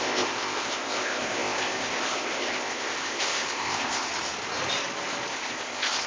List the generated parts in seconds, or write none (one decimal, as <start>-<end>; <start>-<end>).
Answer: 0.0-4.1; 5.3-6.1